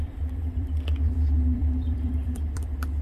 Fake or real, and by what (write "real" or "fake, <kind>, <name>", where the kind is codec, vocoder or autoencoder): fake, vocoder, BigVGAN v2